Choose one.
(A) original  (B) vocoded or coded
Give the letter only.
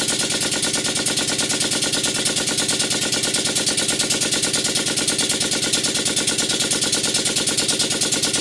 A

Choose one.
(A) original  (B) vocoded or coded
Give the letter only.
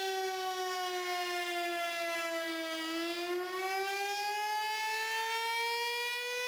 A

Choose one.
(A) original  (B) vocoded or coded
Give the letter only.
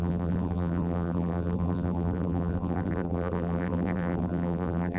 B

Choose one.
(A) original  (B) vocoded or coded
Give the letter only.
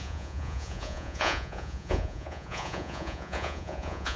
B